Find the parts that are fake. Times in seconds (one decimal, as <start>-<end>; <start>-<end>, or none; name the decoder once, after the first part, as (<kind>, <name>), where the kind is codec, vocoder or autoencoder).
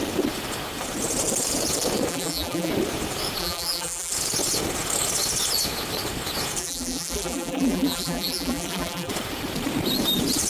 2.1-2.7 (vocoder, BigVGAN v2); 3.4-4.1; 6.6-9.1